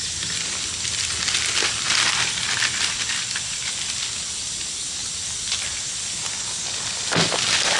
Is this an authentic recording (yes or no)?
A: yes